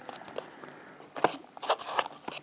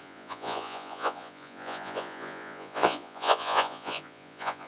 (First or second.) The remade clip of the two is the second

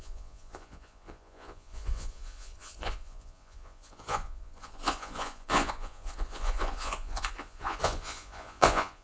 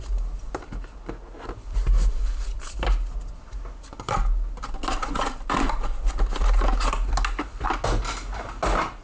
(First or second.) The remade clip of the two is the first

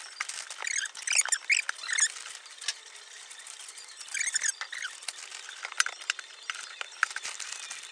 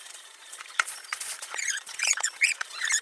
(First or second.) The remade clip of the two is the second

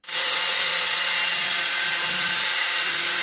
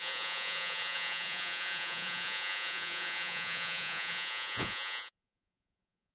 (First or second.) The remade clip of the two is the second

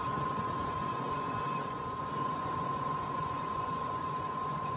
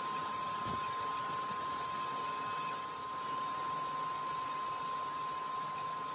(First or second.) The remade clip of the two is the first